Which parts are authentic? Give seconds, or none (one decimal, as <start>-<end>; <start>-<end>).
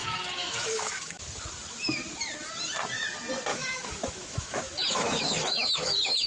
1.2-3.5